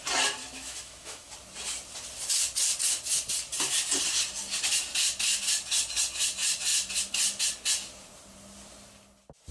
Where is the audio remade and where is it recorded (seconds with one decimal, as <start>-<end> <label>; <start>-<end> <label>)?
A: 0.0-0.4 recorded; 0.4-1.3 remade; 1.3-9.5 recorded